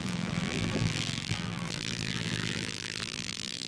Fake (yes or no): yes